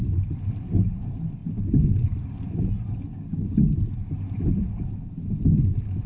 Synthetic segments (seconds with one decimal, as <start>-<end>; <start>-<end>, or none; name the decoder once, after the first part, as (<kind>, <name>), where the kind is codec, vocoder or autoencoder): 3.1-3.7 (codec, DAC)